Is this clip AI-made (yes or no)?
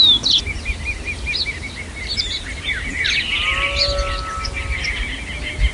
no